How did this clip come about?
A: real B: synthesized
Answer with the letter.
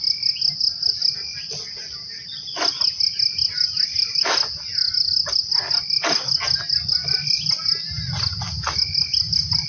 A